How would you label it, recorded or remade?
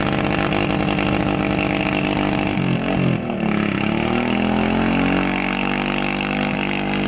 recorded